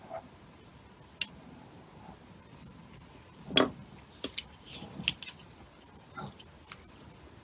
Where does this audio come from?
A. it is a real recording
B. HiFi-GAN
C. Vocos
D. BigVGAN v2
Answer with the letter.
A